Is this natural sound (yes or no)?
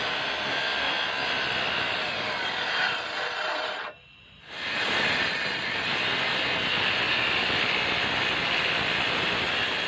yes